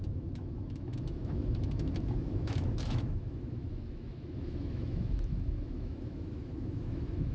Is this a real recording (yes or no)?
no